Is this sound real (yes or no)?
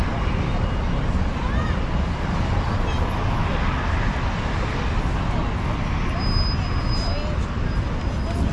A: yes